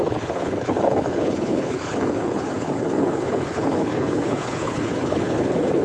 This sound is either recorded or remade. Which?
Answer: remade